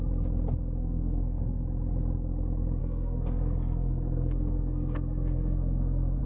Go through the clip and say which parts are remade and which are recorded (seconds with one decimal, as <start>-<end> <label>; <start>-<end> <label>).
0.0-0.8 recorded; 0.8-1.6 remade; 1.6-2.8 recorded; 2.8-6.2 remade